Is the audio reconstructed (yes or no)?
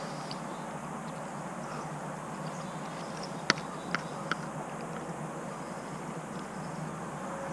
no